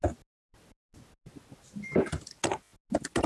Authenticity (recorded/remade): recorded